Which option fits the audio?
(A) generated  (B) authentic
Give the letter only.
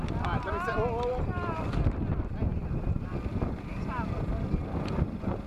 B